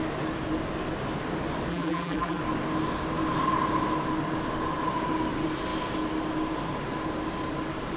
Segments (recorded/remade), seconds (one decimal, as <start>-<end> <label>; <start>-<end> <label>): 0.0-1.7 recorded; 1.7-2.4 remade; 2.4-8.0 recorded